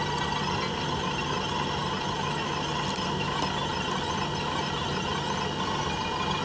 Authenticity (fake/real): real